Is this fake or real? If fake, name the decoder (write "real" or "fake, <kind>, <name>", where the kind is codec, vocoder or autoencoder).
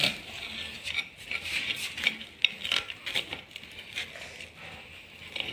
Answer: real